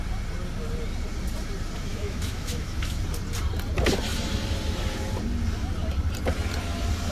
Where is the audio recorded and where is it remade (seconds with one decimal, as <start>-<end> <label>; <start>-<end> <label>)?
0.0-1.9 recorded; 1.9-3.0 remade; 3.0-7.1 recorded